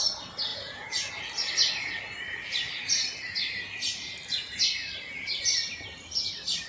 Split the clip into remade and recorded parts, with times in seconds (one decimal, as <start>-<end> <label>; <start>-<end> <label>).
0.0-0.5 recorded; 0.5-1.1 remade; 1.1-6.7 recorded